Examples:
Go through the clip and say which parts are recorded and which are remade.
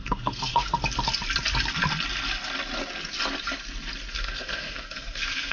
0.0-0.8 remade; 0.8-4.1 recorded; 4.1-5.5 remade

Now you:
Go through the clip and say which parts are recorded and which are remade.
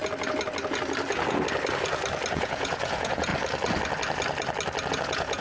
0.0-2.3 recorded; 2.3-3.3 remade; 3.3-4.9 recorded; 4.9-5.4 remade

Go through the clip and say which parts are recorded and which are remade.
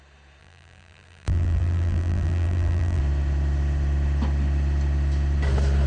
0.0-0.4 recorded; 0.4-3.0 remade; 3.0-5.9 recorded